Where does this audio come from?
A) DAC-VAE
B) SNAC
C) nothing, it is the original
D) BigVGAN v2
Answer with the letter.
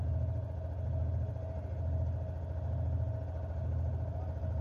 C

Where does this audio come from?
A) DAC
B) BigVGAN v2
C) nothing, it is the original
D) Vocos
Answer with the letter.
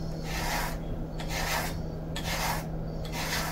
C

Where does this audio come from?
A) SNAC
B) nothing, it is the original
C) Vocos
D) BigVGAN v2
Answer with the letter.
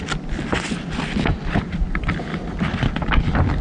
B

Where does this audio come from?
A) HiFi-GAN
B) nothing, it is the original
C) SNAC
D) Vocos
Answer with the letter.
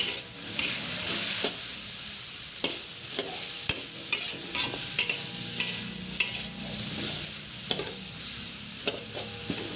B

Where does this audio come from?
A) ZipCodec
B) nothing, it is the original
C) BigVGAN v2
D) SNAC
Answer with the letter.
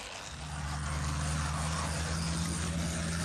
B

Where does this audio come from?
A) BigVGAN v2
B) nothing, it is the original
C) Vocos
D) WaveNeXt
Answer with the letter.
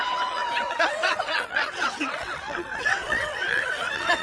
D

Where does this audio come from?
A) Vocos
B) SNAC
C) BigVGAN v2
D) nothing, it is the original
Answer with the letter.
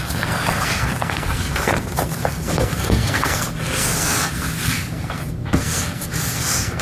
B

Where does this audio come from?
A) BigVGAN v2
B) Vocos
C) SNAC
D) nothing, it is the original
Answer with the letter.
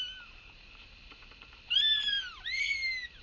D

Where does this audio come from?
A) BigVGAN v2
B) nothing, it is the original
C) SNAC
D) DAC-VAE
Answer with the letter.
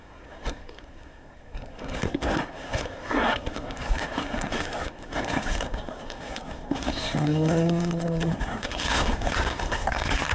C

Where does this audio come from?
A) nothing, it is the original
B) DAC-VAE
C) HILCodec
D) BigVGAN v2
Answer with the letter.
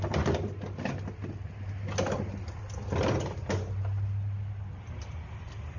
A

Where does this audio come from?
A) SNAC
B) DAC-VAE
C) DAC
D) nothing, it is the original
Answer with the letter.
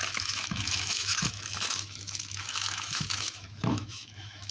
B